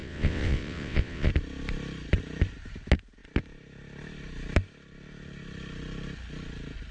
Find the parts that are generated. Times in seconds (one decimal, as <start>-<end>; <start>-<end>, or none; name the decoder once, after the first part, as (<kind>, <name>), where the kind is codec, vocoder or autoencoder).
0.0-1.3 (vocoder, WaveNeXt)